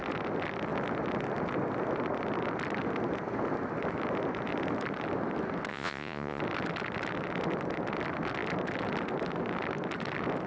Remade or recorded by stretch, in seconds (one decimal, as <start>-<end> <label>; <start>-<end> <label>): 0.0-5.7 recorded; 5.7-6.4 remade; 6.4-10.5 recorded